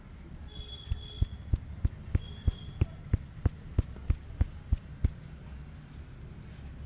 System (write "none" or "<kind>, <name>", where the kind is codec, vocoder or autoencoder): none